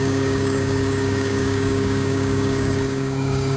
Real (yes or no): no